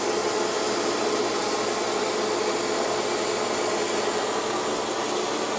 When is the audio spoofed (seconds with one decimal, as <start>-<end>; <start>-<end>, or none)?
none